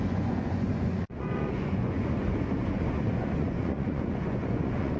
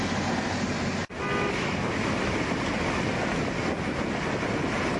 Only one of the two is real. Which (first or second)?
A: second